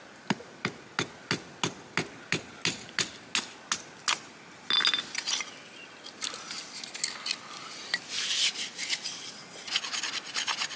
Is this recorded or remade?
recorded